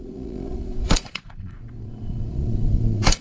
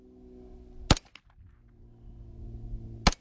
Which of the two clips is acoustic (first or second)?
second